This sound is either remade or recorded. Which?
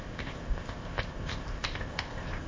remade